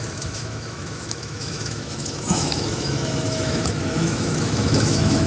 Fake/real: fake